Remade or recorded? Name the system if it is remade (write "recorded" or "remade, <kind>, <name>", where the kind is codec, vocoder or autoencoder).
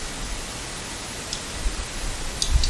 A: recorded